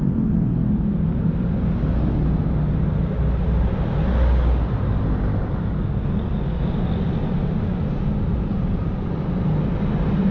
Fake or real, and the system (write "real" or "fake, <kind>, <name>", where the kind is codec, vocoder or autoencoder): real